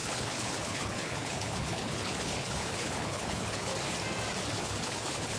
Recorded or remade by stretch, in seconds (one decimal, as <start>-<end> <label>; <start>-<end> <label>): 0.0-3.7 remade; 3.7-4.4 recorded; 4.4-5.4 remade